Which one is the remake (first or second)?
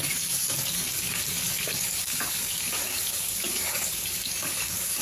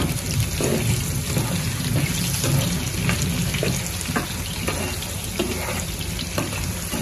first